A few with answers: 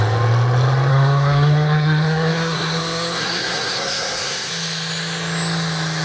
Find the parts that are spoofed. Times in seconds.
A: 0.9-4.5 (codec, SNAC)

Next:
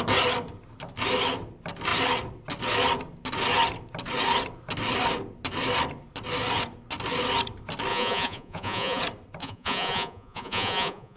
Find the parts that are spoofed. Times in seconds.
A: 7.9-9.0 (vocoder, Vocos); 9.4-11.2

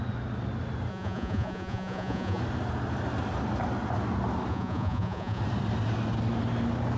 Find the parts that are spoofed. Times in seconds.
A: 0.9-2.4 (vocoder, Vocos); 4.5-5.4

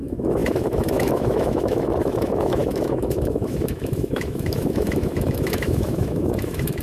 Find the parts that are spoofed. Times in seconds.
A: 0.0-6.8 (autoencoder, DAC-VAE)

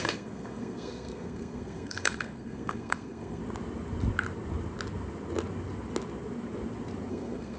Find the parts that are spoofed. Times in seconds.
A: 0.0-3.4 (codec, SNAC); 7.1-7.6